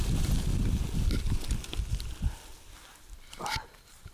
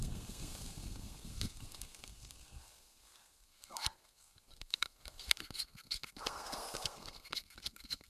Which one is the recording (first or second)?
first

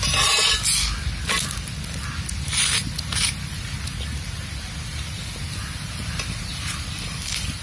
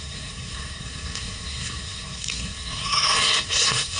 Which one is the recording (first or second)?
first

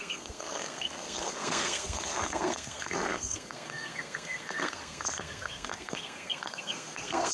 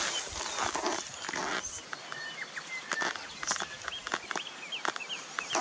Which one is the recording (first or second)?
second